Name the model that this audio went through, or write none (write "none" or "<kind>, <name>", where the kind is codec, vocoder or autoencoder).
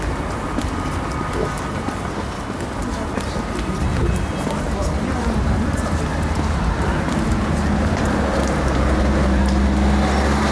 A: none